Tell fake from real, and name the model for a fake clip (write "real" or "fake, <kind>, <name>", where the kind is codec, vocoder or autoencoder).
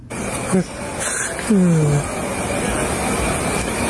real